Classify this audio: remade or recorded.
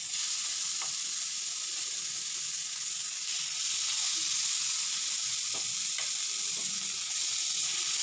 recorded